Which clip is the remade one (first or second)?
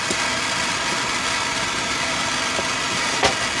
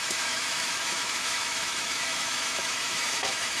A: second